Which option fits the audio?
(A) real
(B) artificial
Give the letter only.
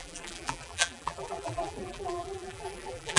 B